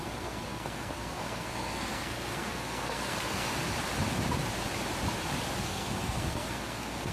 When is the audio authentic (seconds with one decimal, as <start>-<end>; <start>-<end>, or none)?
3.5-5.6